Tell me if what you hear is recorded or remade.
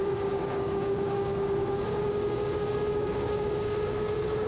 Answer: remade